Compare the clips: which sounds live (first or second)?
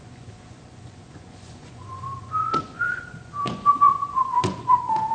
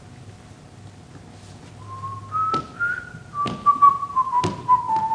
second